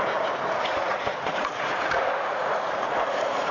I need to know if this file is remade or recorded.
remade